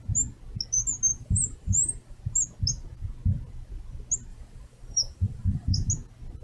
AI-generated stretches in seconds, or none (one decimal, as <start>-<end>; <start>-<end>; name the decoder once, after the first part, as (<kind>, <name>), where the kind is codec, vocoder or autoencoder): 1.1-2.2 (vocoder, BigVGAN v2); 4.3-5.9